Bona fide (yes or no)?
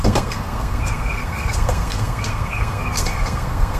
no